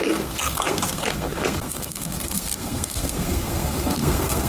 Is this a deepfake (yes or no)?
yes